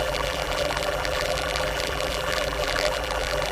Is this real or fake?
fake